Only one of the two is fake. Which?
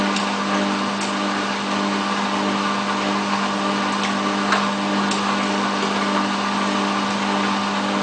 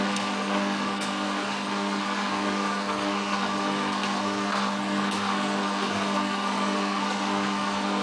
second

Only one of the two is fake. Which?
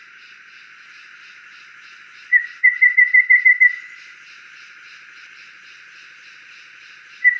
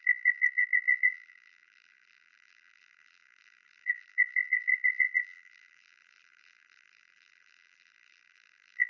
second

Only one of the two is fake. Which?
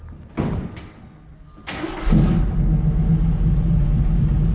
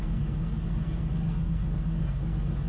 second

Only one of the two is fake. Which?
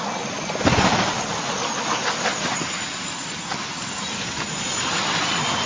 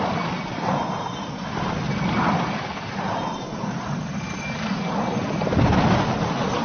first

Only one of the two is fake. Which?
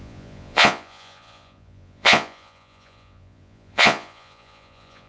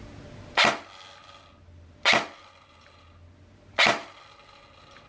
first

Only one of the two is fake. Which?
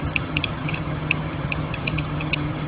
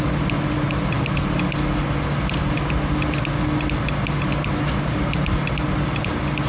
first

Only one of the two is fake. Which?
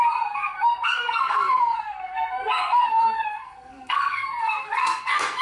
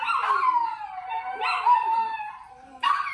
first